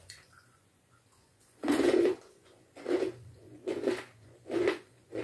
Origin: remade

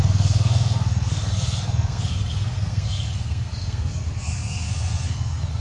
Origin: remade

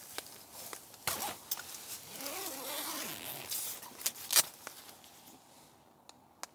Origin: recorded